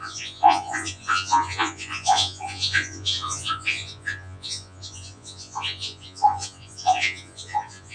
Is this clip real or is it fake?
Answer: fake